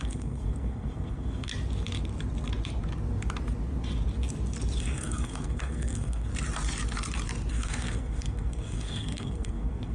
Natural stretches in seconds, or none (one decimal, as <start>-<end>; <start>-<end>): 1.5-4.8; 6.3-7.5

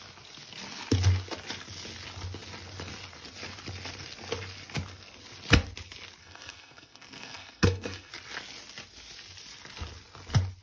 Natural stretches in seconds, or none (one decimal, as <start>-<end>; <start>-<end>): 0.0-6.2; 8.1-10.6

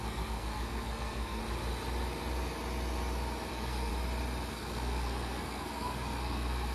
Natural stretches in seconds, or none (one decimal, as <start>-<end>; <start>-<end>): 1.4-3.5; 3.9-4.5